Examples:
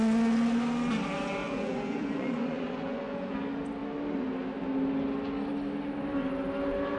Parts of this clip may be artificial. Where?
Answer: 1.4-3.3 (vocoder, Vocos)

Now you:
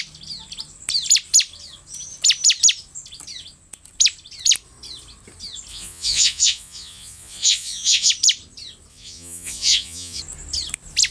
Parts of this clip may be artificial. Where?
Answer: 5.7-8.1 (vocoder, Vocos); 8.9-10.2

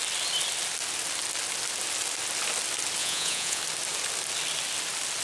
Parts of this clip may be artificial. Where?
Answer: 3.0-3.6 (vocoder, Vocos)

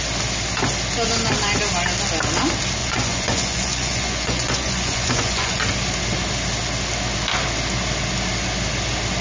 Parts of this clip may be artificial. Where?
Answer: 2.8-5.6 (vocoder, Vocos)